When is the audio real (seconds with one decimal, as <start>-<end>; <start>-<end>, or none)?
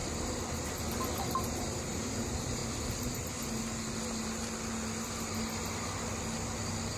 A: 0.0-1.6; 2.6-7.0